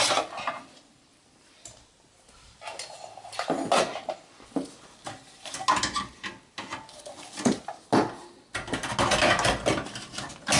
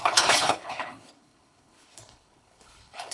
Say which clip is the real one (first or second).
first